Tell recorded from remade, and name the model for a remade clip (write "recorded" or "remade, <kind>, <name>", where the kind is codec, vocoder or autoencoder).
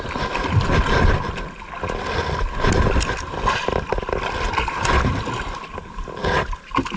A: recorded